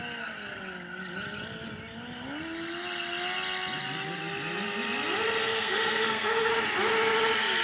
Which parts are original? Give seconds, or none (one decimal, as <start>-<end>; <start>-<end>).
0.0-5.4; 6.5-7.6